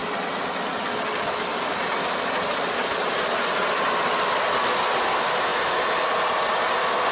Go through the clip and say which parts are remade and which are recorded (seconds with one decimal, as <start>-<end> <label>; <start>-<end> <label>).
0.0-7.1 recorded